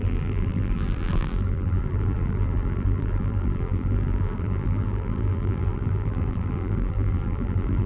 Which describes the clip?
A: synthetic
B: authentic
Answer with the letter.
A